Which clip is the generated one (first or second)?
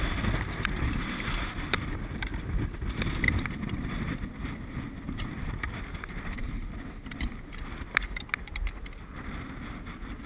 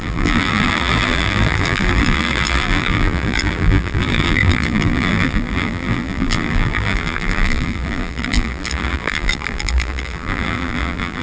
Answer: second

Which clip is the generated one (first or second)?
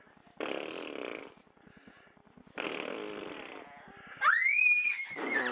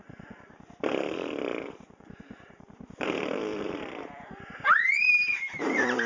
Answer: second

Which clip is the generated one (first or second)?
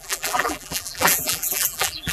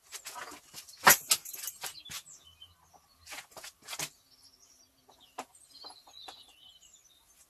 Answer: first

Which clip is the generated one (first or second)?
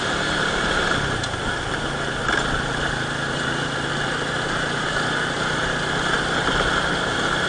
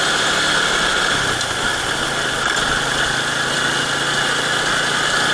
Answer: first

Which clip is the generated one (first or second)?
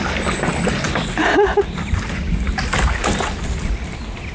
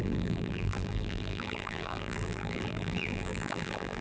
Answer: second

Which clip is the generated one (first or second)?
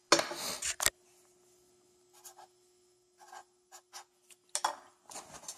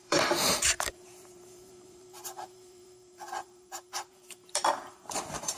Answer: second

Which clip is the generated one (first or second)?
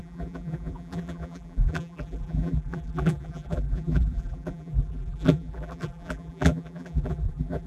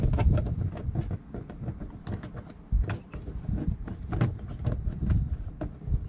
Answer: first